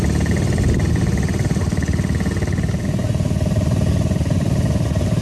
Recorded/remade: recorded